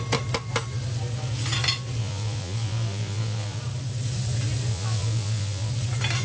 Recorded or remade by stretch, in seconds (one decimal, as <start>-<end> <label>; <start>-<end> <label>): 0.0-2.0 recorded; 2.0-3.6 remade; 3.6-4.7 recorded; 4.7-5.7 remade; 5.7-6.2 recorded